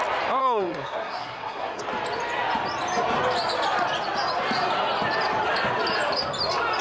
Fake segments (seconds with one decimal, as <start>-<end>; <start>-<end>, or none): 0.4-1.8

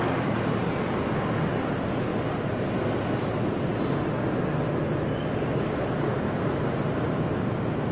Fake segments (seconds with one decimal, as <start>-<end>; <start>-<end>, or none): none

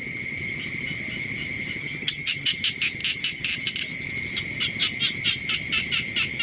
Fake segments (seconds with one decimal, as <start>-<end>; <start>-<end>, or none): 1.8-2.6

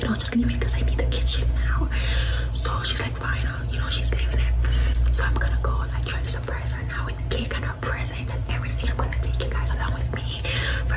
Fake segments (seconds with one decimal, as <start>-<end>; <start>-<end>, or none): 8.7-9.7

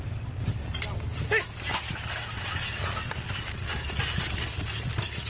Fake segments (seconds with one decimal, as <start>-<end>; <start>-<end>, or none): none

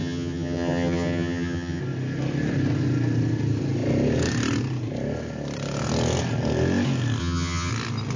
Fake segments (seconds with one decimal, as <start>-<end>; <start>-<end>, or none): 0.0-1.8; 7.2-7.7